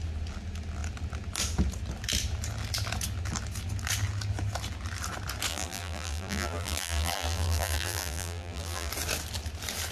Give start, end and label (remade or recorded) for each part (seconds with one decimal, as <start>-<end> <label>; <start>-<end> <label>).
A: 0.0-5.5 recorded; 5.5-8.9 remade; 8.9-9.9 recorded